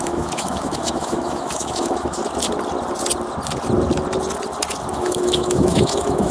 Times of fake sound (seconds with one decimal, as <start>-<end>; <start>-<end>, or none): 0.0-2.2; 4.9-6.3